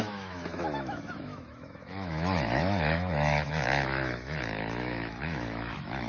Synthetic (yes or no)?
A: yes